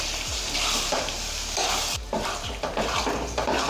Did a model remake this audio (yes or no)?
yes